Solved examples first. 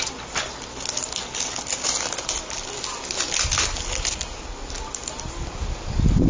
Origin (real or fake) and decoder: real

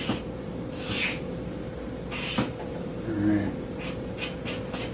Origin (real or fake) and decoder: real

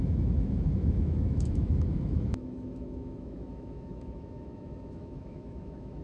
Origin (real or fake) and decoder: fake, autoencoder, DAC-VAE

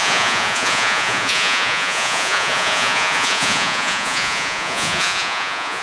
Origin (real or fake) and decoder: fake, vocoder, Vocos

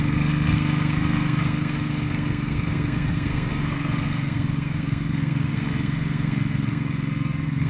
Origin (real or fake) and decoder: fake, codec, SNAC